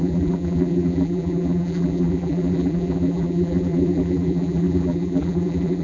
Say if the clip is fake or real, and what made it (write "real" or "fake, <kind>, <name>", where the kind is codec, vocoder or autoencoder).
fake, vocoder, BigVGAN v2